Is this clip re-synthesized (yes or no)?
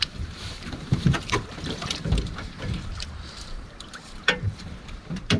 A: yes